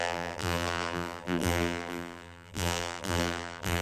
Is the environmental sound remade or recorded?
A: remade